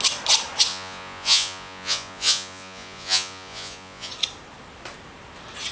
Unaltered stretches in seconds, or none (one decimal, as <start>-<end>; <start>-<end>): 0.0-0.7; 4.1-5.7